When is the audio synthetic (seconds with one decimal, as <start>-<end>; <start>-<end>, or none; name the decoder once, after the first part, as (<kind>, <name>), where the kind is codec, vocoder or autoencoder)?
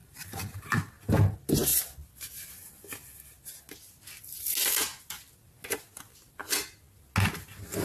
0.0-0.9 (vocoder, BigVGAN v2)